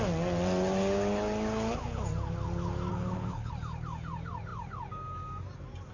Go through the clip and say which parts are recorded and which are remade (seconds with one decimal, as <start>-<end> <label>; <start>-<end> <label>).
0.0-2.9 recorded; 2.9-3.5 remade; 3.5-5.9 recorded